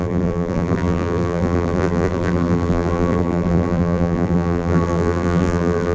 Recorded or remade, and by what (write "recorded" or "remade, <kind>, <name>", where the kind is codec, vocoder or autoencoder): remade, vocoder, BigVGAN v2